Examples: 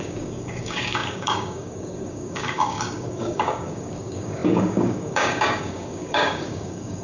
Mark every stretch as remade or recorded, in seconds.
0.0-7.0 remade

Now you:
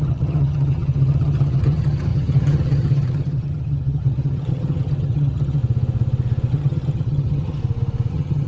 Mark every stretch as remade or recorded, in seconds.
0.0-5.6 remade; 5.6-6.5 recorded; 6.5-7.6 remade; 7.6-8.1 recorded; 8.1-8.5 remade

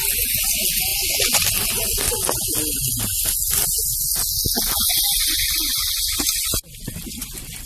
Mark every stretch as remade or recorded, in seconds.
0.0-7.7 recorded